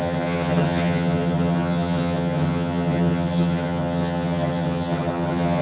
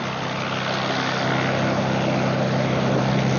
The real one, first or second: second